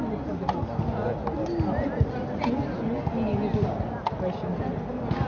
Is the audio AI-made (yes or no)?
no